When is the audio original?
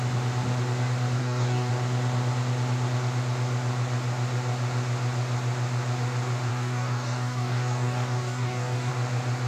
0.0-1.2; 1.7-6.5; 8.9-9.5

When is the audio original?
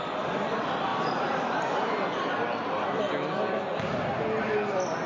0.0-5.1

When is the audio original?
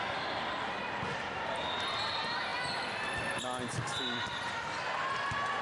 0.0-5.6